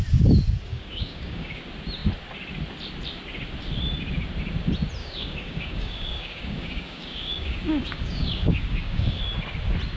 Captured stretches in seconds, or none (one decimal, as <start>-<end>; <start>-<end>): 0.0-0.7; 1.6-5.0; 9.2-10.0